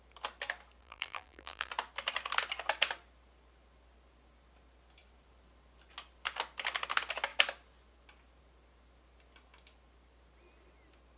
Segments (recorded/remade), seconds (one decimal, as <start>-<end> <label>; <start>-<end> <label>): 0.0-0.8 recorded; 0.8-1.7 remade; 1.7-11.2 recorded